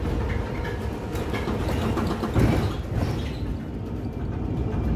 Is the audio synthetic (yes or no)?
no